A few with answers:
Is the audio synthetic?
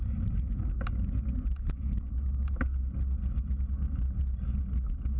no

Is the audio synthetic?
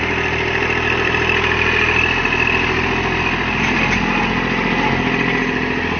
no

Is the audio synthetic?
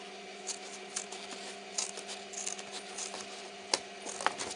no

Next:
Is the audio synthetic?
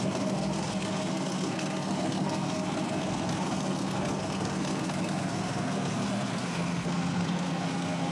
yes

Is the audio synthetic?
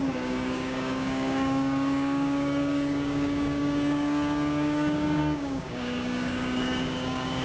yes